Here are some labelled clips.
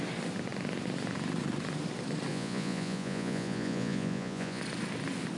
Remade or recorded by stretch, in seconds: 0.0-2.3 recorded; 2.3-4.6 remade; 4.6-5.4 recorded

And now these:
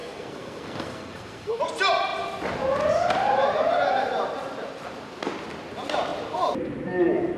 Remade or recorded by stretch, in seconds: 0.0-1.6 remade; 1.6-7.4 recorded